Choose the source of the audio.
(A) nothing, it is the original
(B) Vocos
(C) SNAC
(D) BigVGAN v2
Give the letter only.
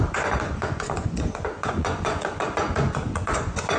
B